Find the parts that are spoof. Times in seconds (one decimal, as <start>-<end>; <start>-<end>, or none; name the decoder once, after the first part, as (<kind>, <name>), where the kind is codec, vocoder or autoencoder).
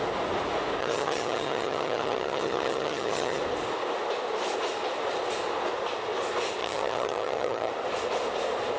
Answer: 0.8-3.4 (vocoder, HiFi-GAN); 6.6-7.7